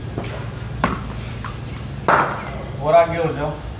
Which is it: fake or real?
real